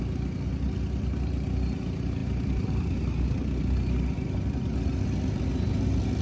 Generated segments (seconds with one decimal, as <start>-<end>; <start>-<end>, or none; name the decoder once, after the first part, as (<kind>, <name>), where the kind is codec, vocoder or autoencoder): none